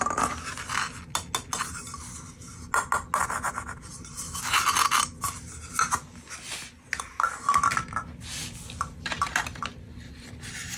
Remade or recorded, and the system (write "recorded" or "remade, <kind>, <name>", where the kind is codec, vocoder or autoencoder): recorded